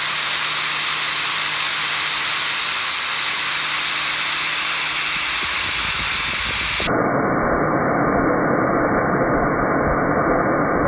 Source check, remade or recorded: recorded